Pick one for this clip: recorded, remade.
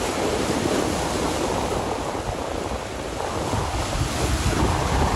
recorded